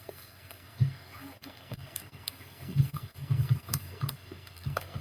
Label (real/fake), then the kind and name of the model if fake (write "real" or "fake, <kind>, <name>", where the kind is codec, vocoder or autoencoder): fake, codec, SNAC